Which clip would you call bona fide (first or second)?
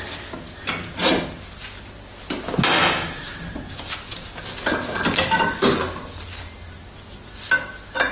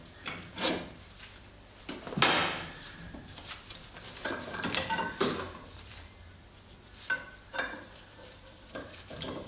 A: first